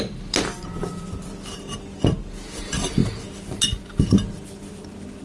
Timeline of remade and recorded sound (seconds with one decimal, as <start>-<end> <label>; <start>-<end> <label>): 0.0-5.2 recorded